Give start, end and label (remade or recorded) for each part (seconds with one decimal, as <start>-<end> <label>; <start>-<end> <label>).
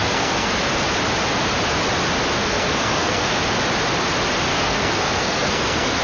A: 0.0-0.5 remade; 0.5-2.4 recorded; 2.4-3.4 remade; 3.4-4.5 recorded; 4.5-6.0 remade